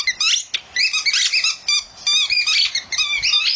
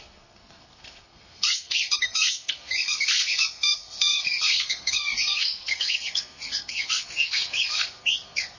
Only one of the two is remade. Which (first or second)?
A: second